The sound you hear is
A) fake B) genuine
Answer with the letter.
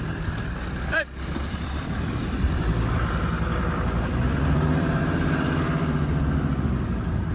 A